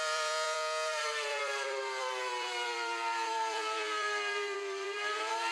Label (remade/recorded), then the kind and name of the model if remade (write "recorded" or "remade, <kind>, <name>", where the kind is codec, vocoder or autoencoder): remade, vocoder, BigVGAN v2